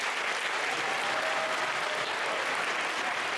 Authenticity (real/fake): real